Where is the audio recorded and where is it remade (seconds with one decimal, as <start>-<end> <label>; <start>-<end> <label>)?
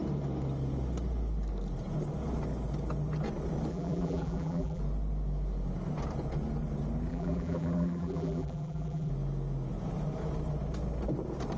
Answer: 0.0-3.7 recorded; 3.7-4.8 remade; 4.8-7.1 recorded; 7.1-9.1 remade; 9.1-11.6 recorded